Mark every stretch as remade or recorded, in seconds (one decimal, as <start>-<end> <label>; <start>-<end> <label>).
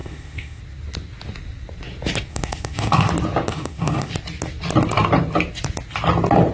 0.0-0.6 remade; 0.6-2.3 recorded; 2.3-3.1 remade; 3.1-3.5 recorded; 3.5-4.1 remade; 4.1-6.5 recorded